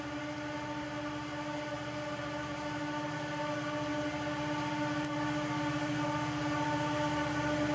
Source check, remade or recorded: recorded